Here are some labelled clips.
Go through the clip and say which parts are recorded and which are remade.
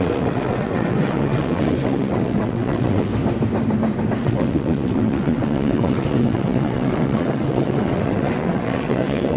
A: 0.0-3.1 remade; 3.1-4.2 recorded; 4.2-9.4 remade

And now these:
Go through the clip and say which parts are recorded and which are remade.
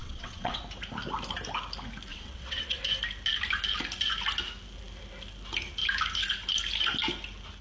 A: 0.0-0.6 remade; 0.6-2.1 recorded; 2.1-2.8 remade; 2.8-7.6 recorded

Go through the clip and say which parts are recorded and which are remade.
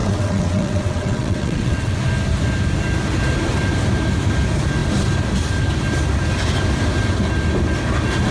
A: 0.0-2.0 remade; 2.0-8.3 recorded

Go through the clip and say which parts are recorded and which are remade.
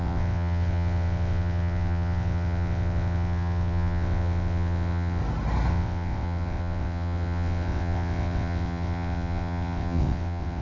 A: 0.0-5.2 remade; 5.2-5.7 recorded; 5.7-10.6 remade